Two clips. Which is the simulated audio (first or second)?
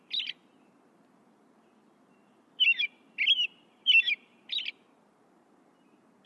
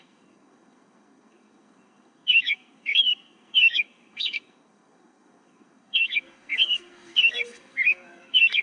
second